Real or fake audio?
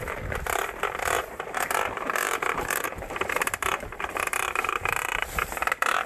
fake